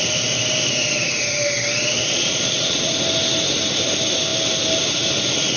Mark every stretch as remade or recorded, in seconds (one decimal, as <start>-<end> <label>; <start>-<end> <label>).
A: 0.0-2.1 recorded; 2.1-2.9 remade; 2.9-5.6 recorded